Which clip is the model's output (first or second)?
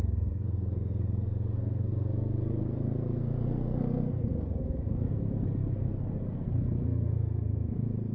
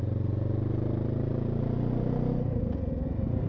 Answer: first